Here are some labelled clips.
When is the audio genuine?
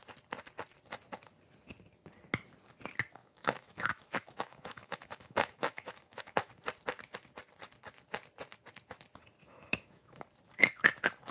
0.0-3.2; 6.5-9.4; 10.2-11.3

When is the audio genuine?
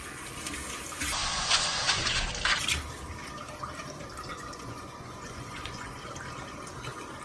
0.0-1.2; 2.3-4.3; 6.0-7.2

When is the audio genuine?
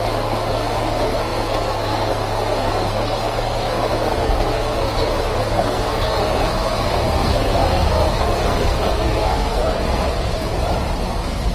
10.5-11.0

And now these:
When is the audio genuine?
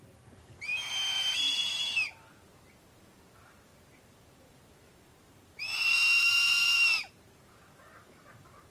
0.7-1.6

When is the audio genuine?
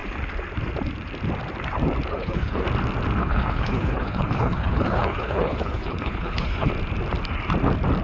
0.0-2.1; 2.6-3.2; 6.7-8.0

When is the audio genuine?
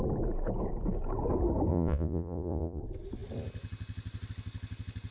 0.0-1.7; 2.8-5.1